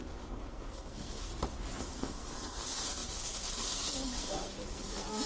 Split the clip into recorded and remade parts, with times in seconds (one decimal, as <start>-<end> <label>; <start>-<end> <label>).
0.0-1.3 remade; 1.3-1.8 recorded; 1.8-5.3 remade